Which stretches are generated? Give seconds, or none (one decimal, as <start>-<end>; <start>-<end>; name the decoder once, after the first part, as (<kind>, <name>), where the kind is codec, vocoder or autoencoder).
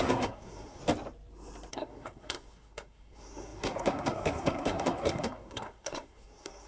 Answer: 0.0-0.8 (codec, SNAC); 1.7-6.7